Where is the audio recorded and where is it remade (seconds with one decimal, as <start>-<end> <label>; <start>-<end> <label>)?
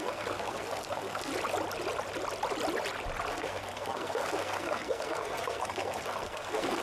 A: 0.0-1.3 remade; 1.3-3.3 recorded; 3.3-6.8 remade